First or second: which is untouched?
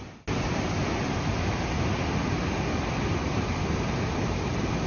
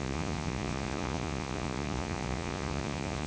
first